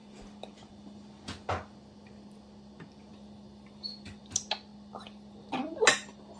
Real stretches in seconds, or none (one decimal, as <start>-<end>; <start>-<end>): 0.0-3.1; 4.2-4.7; 5.5-6.4